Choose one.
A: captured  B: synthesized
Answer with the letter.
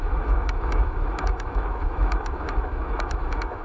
B